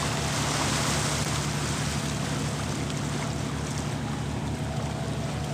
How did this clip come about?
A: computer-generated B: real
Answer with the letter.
B